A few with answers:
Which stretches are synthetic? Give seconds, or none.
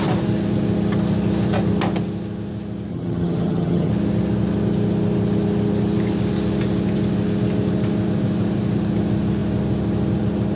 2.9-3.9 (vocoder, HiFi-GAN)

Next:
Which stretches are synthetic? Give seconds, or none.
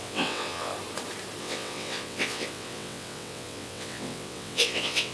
0.0-0.7 (vocoder, WaveNeXt); 1.4-5.1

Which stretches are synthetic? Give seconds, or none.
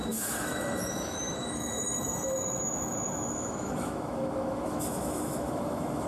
0.0-6.1 (autoencoder, DAC-VAE)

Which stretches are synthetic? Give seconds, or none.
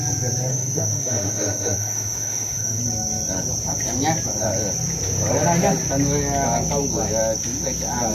0.5-2.8 (autoencoder, DAC-VAE)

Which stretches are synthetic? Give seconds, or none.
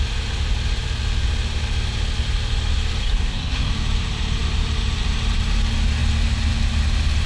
3.0-3.7 (codec, SNAC)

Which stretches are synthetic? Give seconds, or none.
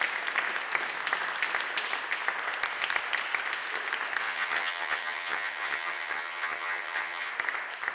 4.2-7.3 (vocoder, HiFi-GAN)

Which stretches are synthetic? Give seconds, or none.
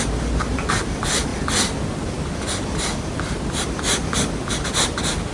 none